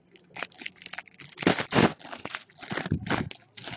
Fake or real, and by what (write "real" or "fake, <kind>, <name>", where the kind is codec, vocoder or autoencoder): real